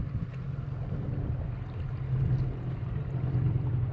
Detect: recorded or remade recorded